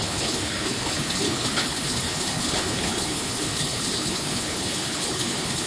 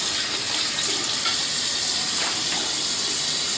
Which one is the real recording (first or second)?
second